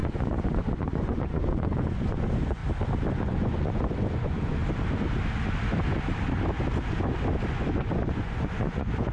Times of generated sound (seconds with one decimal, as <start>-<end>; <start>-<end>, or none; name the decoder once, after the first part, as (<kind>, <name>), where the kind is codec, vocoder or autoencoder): 0.0-2.6 (vocoder, Vocos); 3.1-4.6; 7.5-9.1